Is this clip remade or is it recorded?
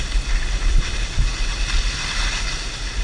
recorded